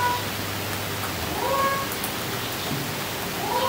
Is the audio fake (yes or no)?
no